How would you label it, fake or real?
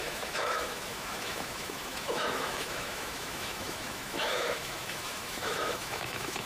fake